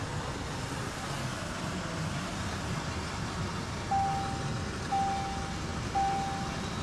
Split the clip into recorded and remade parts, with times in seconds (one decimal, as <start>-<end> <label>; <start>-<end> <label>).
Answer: 0.0-6.8 recorded